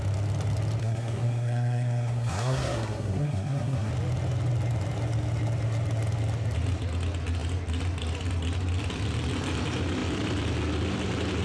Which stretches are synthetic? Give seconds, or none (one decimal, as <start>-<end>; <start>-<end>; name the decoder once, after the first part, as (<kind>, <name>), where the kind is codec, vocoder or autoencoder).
0.8-3.9 (codec, SNAC)